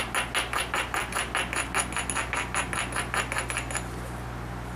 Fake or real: real